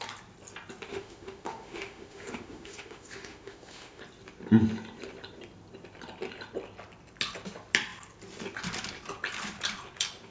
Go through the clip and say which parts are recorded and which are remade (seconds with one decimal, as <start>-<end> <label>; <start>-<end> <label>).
0.0-0.9 recorded; 0.9-4.0 remade; 4.0-10.3 recorded